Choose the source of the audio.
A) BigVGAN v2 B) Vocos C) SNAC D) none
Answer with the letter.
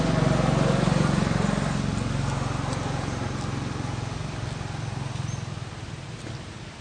D